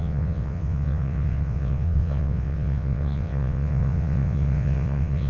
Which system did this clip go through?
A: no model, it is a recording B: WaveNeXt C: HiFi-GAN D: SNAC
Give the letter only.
B